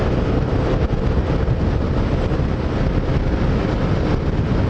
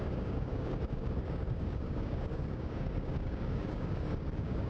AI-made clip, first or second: second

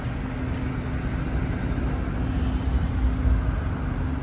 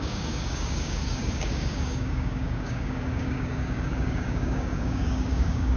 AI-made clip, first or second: second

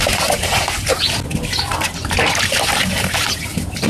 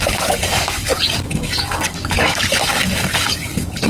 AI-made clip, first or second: second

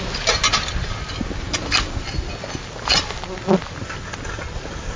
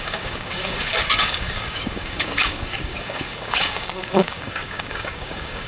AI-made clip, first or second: second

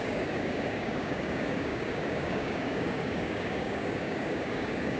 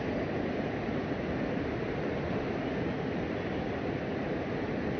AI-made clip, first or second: first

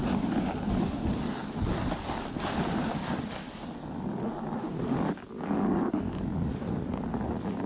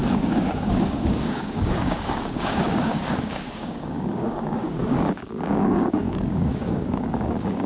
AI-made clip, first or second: second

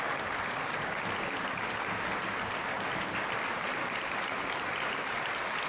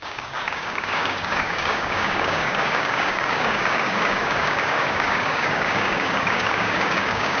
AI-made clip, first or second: second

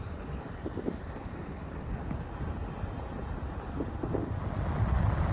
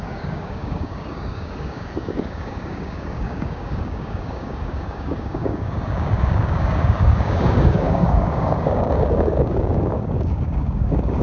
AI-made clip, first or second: second